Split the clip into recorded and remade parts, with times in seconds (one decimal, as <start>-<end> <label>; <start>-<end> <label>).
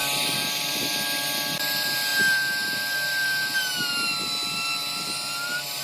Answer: 0.0-0.8 remade; 0.8-5.8 recorded